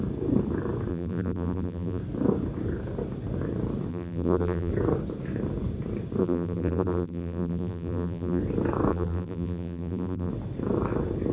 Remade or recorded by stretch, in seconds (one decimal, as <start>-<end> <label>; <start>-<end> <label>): 0.0-0.9 recorded; 0.9-2.0 remade; 2.0-3.9 recorded; 3.9-4.7 remade; 4.7-6.2 recorded; 6.2-8.4 remade; 8.4-8.9 recorded; 8.9-10.3 remade; 10.3-11.3 recorded